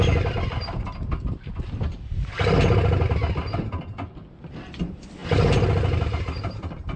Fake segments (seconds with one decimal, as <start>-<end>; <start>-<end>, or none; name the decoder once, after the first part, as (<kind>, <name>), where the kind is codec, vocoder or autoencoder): none